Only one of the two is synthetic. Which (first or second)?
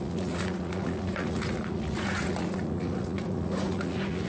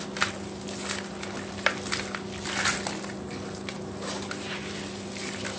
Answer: first